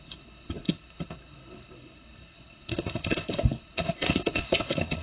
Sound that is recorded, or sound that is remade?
remade